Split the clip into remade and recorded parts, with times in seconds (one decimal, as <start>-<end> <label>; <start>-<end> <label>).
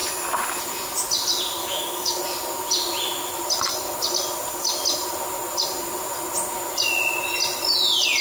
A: 0.0-1.6 recorded; 1.6-2.2 remade; 2.2-8.2 recorded